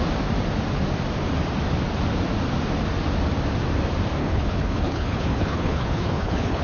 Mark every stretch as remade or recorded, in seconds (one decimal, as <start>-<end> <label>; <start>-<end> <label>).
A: 0.0-4.2 recorded; 4.2-6.6 remade